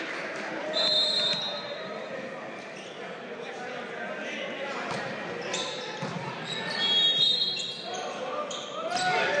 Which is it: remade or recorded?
recorded